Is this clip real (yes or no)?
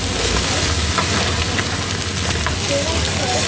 yes